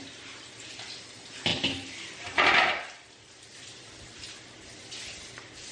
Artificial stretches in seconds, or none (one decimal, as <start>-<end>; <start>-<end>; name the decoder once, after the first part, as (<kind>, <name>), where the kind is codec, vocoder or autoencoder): 0.0-5.7 (vocoder, BigVGAN v2)